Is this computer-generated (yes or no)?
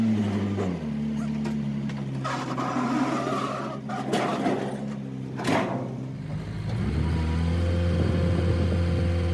no